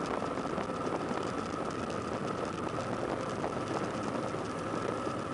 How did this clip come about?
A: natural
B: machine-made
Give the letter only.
B